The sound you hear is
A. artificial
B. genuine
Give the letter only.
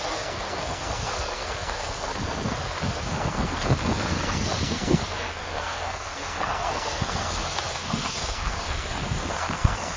A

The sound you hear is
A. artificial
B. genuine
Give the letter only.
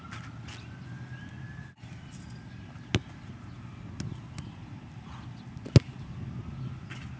B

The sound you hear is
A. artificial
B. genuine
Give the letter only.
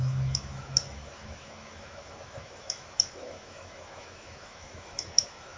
A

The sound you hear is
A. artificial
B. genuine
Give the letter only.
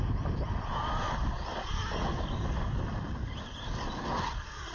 B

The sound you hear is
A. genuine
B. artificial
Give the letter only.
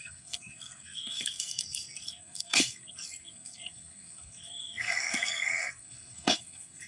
B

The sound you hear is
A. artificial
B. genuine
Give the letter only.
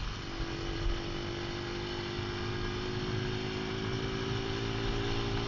B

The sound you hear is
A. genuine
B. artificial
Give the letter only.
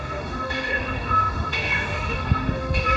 B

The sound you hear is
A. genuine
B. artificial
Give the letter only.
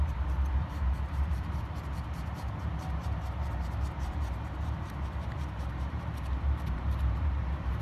B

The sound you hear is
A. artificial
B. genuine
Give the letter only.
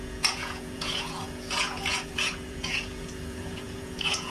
A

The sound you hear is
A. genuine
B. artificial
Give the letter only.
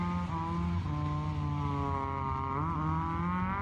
A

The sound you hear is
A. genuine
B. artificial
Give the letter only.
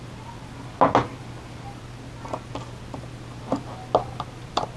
A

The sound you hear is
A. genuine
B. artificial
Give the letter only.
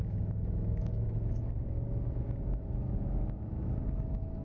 B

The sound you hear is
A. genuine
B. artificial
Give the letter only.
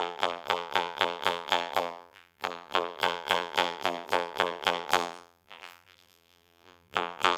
B